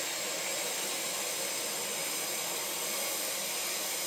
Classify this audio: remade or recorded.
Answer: recorded